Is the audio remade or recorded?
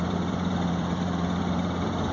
remade